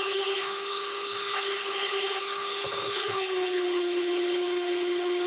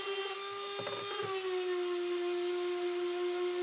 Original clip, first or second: second